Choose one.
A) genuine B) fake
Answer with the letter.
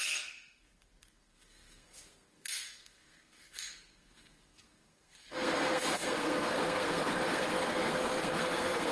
B